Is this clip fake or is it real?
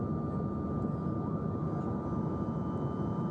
real